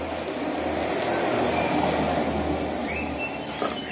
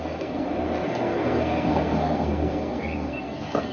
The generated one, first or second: second